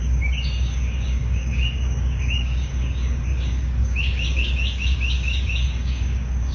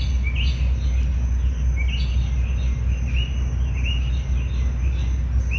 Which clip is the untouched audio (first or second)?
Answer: second